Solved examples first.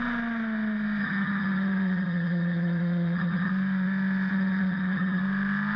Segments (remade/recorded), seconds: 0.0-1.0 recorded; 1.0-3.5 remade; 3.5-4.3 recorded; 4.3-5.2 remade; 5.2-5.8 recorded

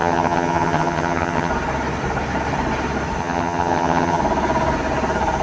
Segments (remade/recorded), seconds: 0.0-1.5 remade; 1.5-3.2 recorded; 3.2-4.2 remade; 4.2-5.4 recorded

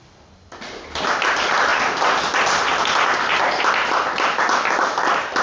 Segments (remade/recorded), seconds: 0.0-5.4 recorded

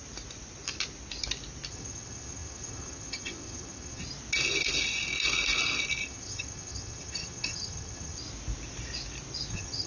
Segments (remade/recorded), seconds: 0.0-1.7 recorded; 1.7-4.0 remade; 4.0-6.0 recorded; 6.0-8.2 remade; 8.2-9.5 recorded; 9.5-9.9 remade